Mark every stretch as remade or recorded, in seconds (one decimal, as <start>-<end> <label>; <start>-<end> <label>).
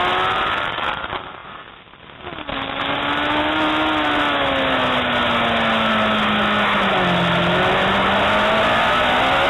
0.0-9.5 recorded